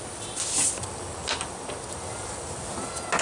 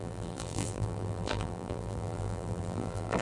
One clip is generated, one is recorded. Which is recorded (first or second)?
first